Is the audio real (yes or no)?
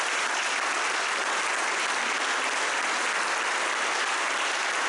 yes